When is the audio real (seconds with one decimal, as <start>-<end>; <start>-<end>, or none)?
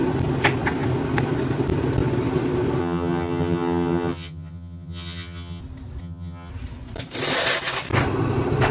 0.0-2.8; 5.6-6.0; 6.5-8.7